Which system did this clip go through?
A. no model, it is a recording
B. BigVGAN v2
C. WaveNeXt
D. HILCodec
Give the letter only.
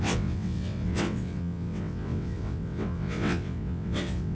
C